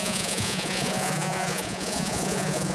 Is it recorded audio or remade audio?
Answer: remade